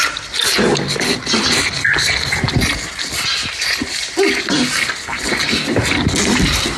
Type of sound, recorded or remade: recorded